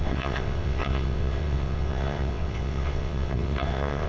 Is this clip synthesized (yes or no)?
yes